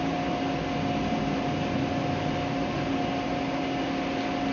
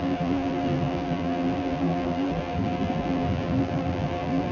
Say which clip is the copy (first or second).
second